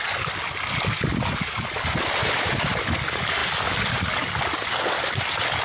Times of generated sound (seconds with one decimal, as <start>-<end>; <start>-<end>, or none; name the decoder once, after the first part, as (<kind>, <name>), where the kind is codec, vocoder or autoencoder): none